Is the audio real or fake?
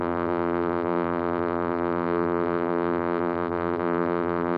fake